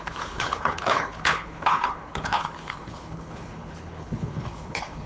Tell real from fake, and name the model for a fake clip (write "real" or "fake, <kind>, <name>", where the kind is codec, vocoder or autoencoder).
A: fake, codec, HILCodec